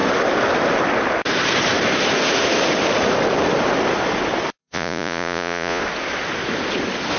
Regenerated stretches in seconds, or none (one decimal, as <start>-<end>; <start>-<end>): 4.6-5.8